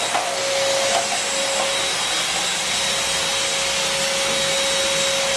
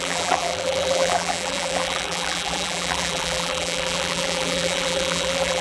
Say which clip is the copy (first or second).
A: second